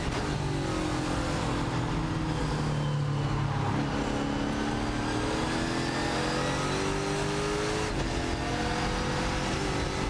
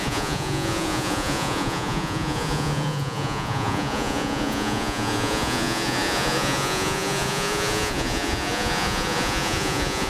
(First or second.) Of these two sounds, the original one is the first